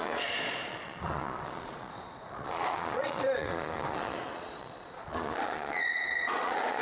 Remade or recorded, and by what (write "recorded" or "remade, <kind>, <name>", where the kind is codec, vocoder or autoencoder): remade, vocoder, Vocos